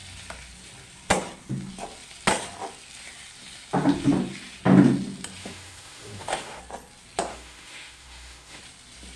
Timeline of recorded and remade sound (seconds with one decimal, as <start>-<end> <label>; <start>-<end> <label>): 0.0-5.4 recorded; 5.4-6.6 remade; 6.6-7.3 recorded; 7.3-8.6 remade; 8.6-9.2 recorded